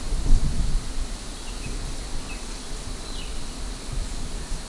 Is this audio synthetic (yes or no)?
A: no